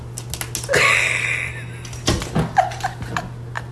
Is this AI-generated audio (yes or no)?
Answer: no